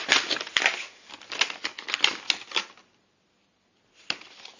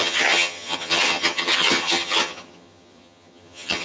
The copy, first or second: second